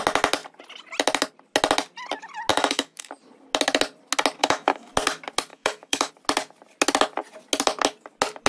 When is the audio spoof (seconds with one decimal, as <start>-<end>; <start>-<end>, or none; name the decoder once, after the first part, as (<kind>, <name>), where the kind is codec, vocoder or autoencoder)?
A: 2.5-3.1 (autoencoder, DAC-VAE); 4.4-4.9; 5.5-6.1